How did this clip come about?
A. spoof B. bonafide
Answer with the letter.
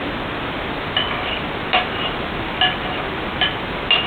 B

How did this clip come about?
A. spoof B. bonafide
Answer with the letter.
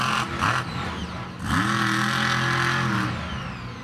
B